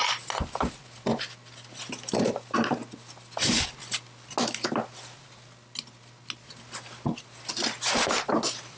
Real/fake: real